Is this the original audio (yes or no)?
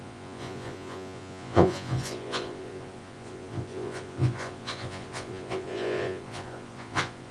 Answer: no